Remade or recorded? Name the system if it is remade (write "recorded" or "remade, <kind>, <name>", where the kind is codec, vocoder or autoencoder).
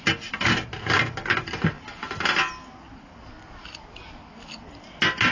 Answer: recorded